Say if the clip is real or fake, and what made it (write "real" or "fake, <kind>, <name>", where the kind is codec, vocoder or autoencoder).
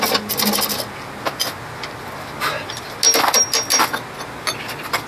real